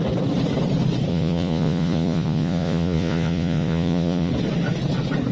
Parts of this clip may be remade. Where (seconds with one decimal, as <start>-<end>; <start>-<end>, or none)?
1.1-4.3